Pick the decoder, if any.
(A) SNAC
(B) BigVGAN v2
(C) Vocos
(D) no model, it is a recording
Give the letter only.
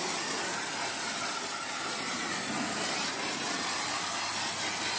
D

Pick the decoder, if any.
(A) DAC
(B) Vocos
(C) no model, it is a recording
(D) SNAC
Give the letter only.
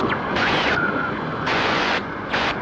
B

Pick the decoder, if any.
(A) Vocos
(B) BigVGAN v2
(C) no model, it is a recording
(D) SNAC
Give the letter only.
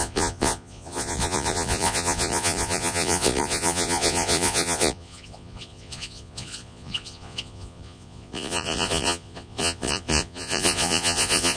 A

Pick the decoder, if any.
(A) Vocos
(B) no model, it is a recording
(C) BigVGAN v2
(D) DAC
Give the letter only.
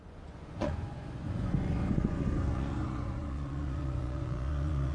A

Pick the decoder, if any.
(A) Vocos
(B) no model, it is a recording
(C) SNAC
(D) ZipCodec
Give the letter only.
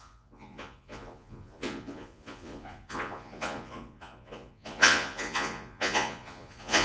A